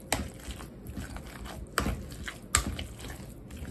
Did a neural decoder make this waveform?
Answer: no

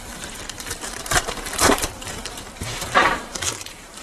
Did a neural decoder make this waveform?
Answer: yes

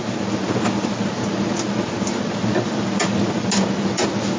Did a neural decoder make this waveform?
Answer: no